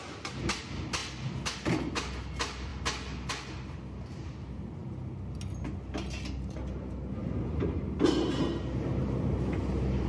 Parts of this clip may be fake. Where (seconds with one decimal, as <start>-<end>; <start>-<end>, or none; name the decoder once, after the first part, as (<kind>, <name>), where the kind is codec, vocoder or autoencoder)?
none